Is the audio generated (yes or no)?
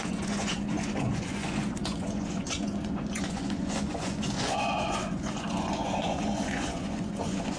yes